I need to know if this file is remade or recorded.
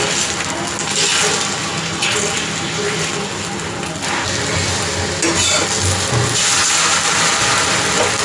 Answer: recorded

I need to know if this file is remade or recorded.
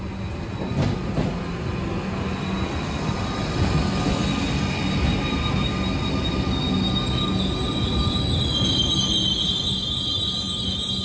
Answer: recorded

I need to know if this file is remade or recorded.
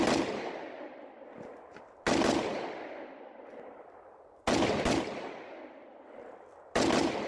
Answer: recorded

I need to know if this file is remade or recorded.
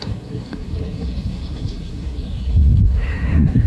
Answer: remade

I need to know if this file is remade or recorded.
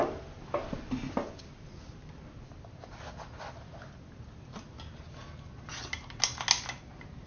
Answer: recorded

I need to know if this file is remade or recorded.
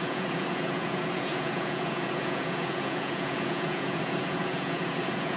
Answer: remade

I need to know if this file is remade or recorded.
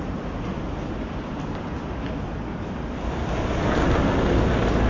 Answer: recorded